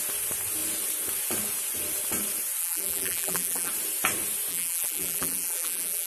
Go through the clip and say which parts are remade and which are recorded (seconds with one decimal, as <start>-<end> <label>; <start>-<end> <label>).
0.0-2.6 recorded; 2.6-3.7 remade; 3.7-4.5 recorded; 4.5-6.1 remade